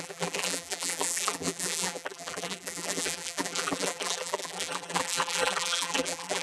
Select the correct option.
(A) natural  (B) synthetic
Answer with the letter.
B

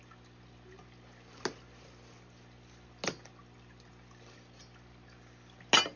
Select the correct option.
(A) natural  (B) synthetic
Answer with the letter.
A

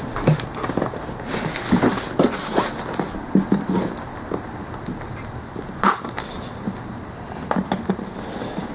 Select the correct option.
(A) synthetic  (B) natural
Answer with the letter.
B